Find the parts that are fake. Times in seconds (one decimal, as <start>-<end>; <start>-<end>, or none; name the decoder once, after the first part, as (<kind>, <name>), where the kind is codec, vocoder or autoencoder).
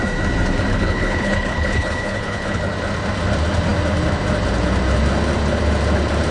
0.7-2.6 (codec, HILCodec)